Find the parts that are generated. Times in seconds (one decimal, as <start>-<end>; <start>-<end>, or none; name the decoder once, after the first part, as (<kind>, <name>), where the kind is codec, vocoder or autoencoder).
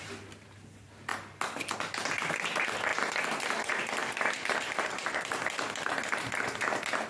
4.0-5.3 (vocoder, BigVGAN v2)